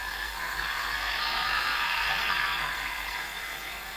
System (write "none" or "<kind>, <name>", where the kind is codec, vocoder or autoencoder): codec, SNAC